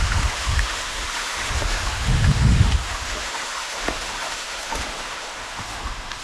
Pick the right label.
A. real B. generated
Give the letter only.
B